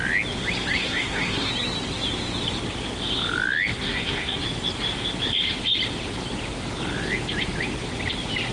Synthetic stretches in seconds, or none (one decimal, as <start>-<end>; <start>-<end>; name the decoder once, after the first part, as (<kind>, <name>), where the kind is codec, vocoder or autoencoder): 0.8-1.5 (codec, SNAC); 3.7-4.4